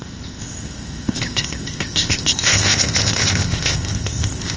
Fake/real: fake